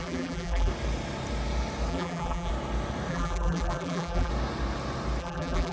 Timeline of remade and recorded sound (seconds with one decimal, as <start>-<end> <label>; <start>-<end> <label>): 0.0-0.7 remade; 0.7-1.9 recorded; 1.9-2.5 remade; 2.5-3.1 recorded; 3.1-4.3 remade; 4.3-5.2 recorded; 5.2-5.7 remade